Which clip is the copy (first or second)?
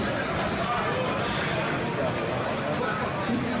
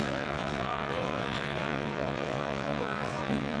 second